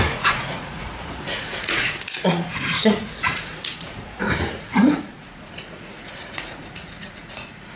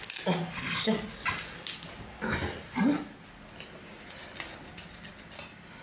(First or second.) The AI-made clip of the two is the first